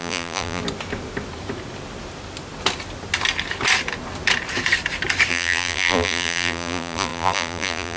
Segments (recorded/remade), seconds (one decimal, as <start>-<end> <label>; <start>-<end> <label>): 0.0-0.6 remade; 0.6-5.3 recorded; 5.3-8.0 remade